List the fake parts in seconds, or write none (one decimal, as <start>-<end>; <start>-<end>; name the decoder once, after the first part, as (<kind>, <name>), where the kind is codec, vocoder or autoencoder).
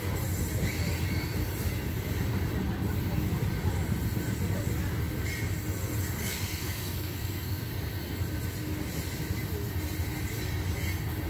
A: 6.2-7.6 (codec, SNAC)